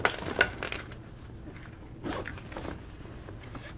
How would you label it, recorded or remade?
recorded